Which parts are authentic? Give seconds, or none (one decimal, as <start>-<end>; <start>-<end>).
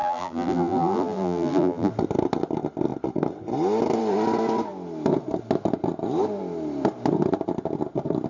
1.9-8.3